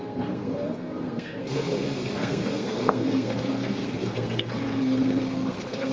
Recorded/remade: remade